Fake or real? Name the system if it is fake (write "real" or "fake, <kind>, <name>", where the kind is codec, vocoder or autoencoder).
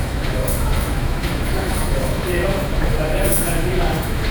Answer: fake, autoencoder, DAC-VAE